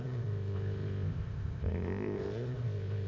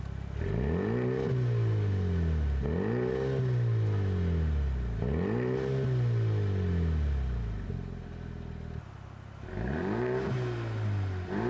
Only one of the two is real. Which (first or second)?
second